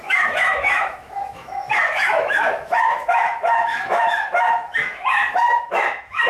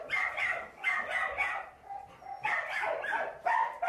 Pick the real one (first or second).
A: second